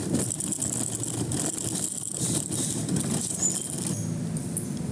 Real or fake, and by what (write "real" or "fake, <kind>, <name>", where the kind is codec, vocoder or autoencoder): real